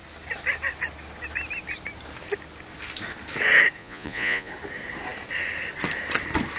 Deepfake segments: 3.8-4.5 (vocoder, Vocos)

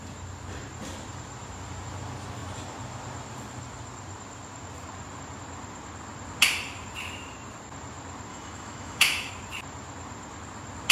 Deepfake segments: 8.3-9.3 (autoencoder, DAC-VAE)

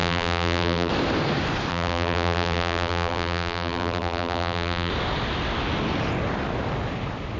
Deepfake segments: 0.0-0.9 (vocoder, BigVGAN v2); 1.7-4.9

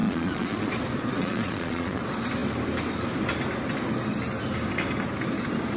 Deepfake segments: 0.0-0.7 (vocoder, Vocos); 1.2-2.0

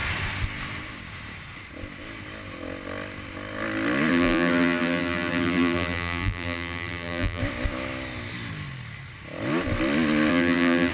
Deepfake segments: 4.1-7.4 (vocoder, BigVGAN v2); 10.3-10.9

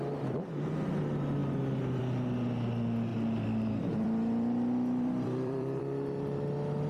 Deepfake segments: 3.1-5.8 (vocoder, BigVGAN v2)

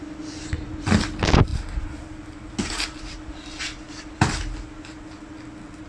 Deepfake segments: none

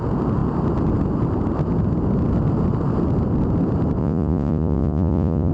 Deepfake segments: 4.0-5.5 (vocoder, Vocos)